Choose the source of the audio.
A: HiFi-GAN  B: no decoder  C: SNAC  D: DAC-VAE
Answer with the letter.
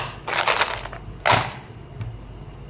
B